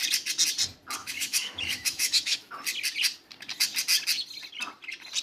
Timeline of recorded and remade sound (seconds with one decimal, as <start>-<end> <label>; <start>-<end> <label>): 0.0-1.0 recorded; 1.0-2.5 remade; 2.5-5.2 recorded